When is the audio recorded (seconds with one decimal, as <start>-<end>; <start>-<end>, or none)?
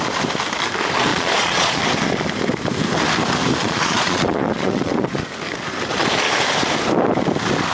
0.0-1.1; 1.8-3.6; 5.2-7.7